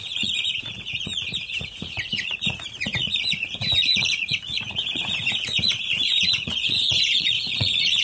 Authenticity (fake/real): fake